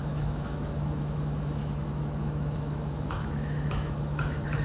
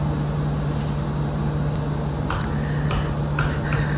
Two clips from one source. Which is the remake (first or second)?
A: first